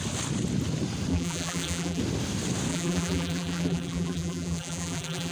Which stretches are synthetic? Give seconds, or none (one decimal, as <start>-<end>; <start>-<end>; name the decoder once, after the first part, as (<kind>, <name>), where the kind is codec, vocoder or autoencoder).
1.1-2.0 (vocoder, BigVGAN v2); 2.7-5.3